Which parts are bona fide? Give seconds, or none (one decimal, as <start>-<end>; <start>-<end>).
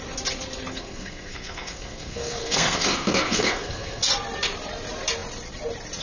0.0-0.7; 4.0-6.0